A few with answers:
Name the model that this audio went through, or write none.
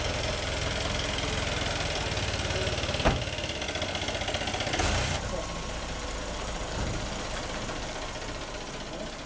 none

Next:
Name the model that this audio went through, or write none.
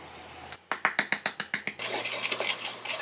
none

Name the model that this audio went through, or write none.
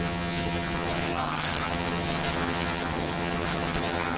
vocoder, HiFi-GAN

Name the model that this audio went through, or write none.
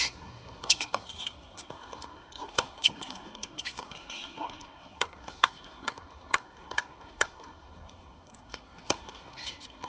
codec, SNAC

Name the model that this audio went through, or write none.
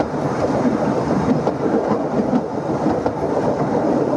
none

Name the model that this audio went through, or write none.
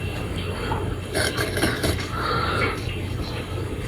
codec, DAC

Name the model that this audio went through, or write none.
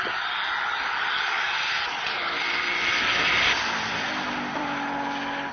none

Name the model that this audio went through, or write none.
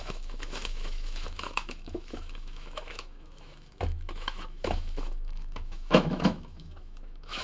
autoencoder, DAC-VAE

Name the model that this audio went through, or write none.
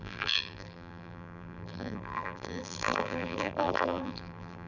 vocoder, BigVGAN v2